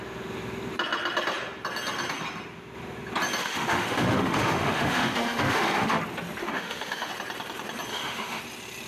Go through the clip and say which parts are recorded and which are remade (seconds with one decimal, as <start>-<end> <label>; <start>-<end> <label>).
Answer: 0.0-3.4 recorded; 3.4-6.0 remade; 6.0-6.4 recorded; 6.4-7.1 remade; 7.1-7.9 recorded; 7.9-8.4 remade; 8.4-8.9 recorded

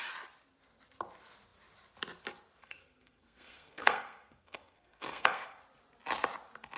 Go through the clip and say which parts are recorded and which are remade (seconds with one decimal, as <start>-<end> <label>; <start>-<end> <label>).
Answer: 0.0-2.6 recorded; 2.6-5.6 remade; 5.6-6.8 recorded

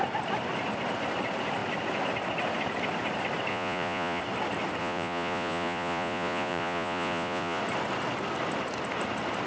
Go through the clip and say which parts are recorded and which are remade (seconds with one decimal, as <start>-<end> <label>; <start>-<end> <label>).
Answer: 0.0-3.5 recorded; 3.5-4.2 remade; 4.2-4.8 recorded; 4.8-7.6 remade; 7.6-9.5 recorded

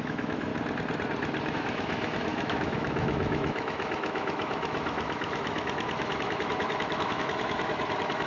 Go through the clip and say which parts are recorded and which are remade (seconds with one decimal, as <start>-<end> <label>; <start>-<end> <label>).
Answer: 0.0-0.5 remade; 0.5-1.5 recorded; 1.5-8.3 remade

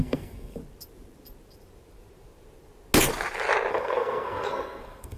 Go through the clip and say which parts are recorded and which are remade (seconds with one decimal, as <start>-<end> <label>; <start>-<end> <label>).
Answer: 0.0-0.6 remade; 0.6-3.7 recorded; 3.7-5.2 remade